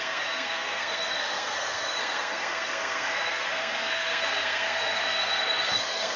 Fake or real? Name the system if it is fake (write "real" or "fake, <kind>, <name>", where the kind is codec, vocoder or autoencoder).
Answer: fake, codec, SNAC